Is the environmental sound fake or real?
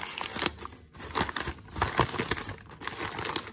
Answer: real